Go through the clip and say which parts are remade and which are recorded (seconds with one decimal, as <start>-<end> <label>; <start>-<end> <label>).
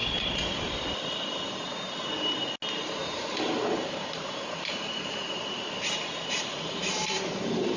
0.0-2.1 remade; 2.1-3.0 recorded; 3.0-7.2 remade; 7.2-7.8 recorded